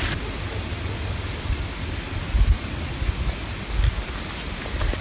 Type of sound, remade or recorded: recorded